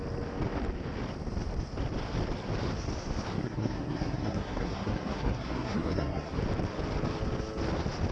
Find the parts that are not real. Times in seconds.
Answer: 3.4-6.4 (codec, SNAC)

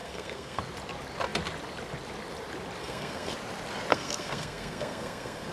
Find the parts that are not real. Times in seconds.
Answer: 0.0-0.6 (codec, SNAC); 2.8-3.3; 3.9-5.5

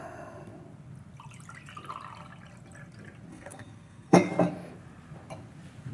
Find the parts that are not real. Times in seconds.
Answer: 3.3-4.3 (codec, SNAC)

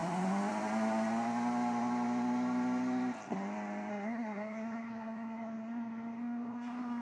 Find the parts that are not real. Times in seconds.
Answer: 3.9-7.0 (codec, SNAC)

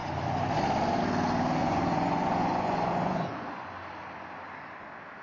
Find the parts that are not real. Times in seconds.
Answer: 1.6-3.8 (vocoder, Vocos)

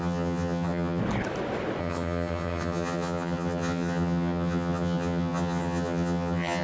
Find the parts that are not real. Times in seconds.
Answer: 0.0-1.0 (vocoder, HiFi-GAN); 1.8-6.6

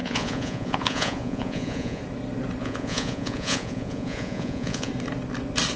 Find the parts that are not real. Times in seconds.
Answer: 0.0-2.0 (vocoder, Vocos); 2.6-4.9

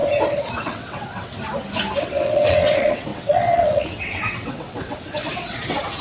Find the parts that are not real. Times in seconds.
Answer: 0.6-1.3 (vocoder, WaveNeXt); 2.0-6.0